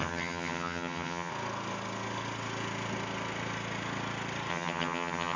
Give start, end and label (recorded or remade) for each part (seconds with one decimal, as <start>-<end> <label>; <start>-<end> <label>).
0.0-1.3 remade; 1.3-4.5 recorded; 4.5-5.4 remade